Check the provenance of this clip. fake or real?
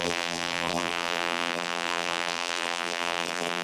fake